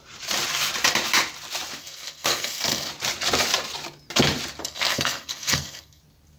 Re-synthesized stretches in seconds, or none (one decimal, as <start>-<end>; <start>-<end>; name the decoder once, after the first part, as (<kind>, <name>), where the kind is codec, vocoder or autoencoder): 1.8-2.9 (codec, SNAC); 4.6-6.0